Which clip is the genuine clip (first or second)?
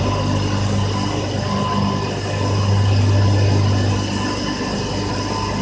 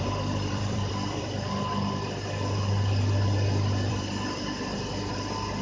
first